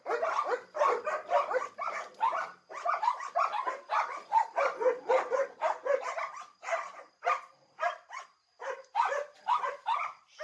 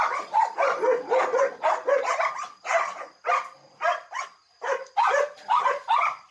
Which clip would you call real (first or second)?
second